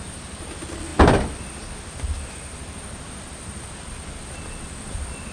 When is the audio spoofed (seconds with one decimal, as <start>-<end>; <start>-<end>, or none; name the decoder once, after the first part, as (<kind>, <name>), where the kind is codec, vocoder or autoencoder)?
none